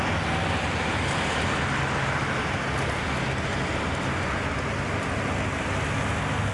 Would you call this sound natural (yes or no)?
yes